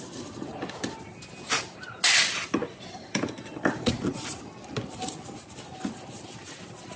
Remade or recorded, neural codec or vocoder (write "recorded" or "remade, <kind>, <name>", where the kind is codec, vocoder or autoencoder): recorded